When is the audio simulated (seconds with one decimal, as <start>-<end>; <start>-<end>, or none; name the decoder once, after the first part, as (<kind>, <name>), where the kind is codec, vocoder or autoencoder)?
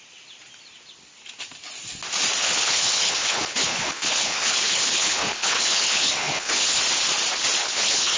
2.4-6.8 (codec, HILCodec); 7.6-8.2